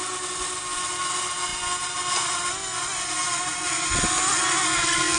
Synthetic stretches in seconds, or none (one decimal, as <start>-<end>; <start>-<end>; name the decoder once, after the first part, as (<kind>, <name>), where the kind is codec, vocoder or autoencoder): 4.7-5.2 (codec, SNAC)